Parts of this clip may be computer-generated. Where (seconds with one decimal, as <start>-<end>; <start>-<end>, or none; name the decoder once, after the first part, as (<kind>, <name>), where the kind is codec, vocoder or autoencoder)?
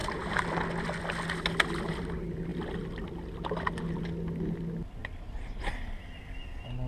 0.0-0.5 (vocoder, BigVGAN v2); 5.0-6.2